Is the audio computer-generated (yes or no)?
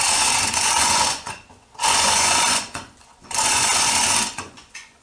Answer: yes